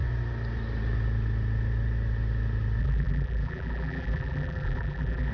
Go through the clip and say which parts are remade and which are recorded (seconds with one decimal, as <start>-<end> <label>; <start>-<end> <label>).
0.0-2.8 recorded; 2.8-5.3 remade